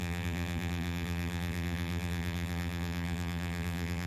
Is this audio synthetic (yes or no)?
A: yes